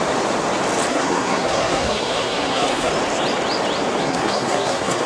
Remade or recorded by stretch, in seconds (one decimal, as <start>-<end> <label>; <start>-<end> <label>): 0.0-0.9 recorded; 0.9-2.9 remade; 2.9-4.0 recorded; 4.0-5.1 remade